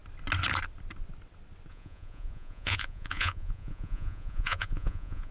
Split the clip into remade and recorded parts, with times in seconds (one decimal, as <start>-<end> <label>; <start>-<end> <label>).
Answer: 0.0-1.7 recorded; 1.7-5.3 remade